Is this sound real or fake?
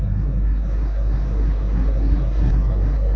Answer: fake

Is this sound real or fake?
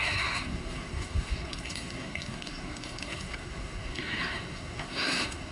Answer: fake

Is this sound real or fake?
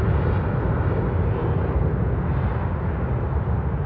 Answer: real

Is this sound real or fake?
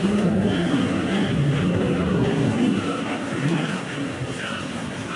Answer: fake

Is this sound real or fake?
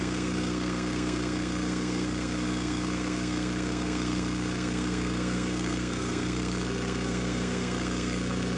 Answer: fake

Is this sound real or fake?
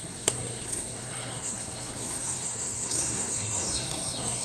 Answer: fake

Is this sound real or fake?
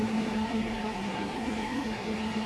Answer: fake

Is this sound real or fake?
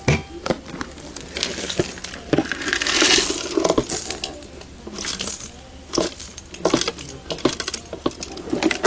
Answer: real